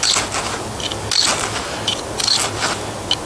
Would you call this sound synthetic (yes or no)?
no